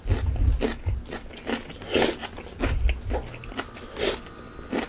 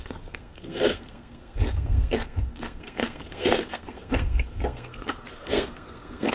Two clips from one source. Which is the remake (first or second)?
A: second